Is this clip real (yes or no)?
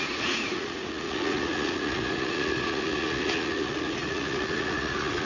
no